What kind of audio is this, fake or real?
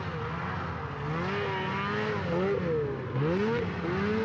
real